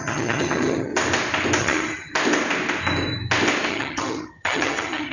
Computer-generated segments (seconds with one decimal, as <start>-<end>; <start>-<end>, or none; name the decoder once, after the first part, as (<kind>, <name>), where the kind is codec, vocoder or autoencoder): 0.0-0.9 (vocoder, HiFi-GAN); 1.6-2.1; 3.7-5.1